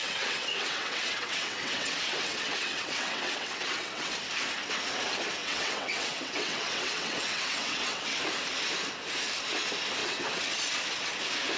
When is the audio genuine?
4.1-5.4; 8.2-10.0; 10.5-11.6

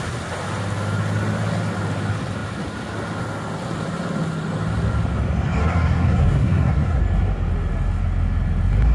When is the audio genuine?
0.0-5.6; 7.0-8.9